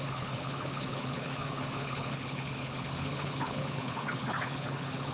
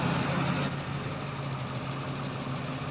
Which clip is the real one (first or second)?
second